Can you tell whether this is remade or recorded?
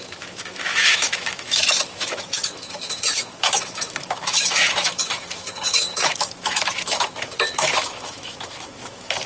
remade